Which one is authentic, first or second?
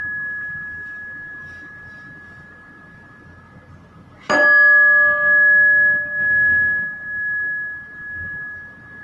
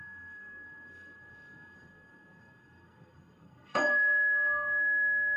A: first